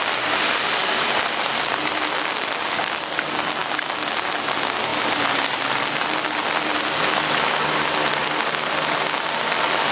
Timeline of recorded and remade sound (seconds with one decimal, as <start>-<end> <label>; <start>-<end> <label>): 0.0-9.9 recorded